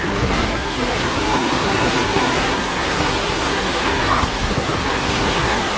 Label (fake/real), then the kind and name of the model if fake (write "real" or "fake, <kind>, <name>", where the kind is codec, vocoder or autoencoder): fake, codec, SNAC